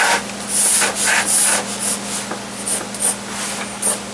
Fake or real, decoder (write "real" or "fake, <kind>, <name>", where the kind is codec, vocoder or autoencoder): real